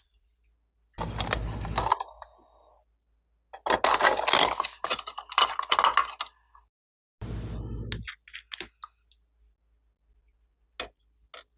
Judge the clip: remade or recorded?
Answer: recorded